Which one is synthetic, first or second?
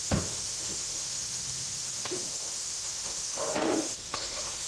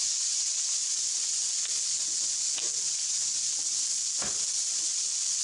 first